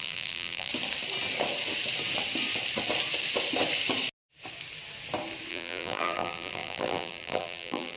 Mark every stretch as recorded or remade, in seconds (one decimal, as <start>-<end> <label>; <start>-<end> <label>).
0.0-0.7 remade; 0.7-5.5 recorded; 5.5-8.0 remade